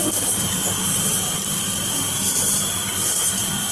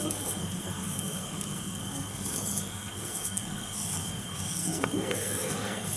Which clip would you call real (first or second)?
first